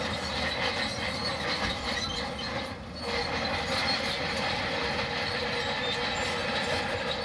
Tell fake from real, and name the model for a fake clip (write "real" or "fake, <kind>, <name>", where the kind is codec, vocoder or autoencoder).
real